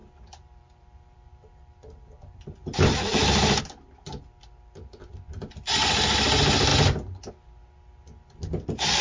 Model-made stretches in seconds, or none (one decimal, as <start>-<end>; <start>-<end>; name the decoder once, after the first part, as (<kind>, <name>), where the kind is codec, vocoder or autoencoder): 0.0-3.6 (vocoder, BigVGAN v2); 6.7-7.3